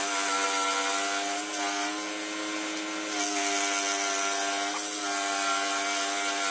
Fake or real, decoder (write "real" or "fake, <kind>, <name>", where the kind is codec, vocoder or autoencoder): real